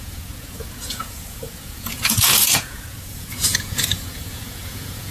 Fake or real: fake